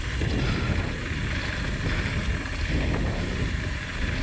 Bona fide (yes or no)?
yes